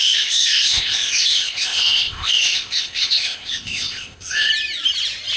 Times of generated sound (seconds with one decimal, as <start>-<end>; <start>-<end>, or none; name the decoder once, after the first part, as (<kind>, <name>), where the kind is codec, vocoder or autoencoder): 0.0-4.5 (codec, ZipCodec)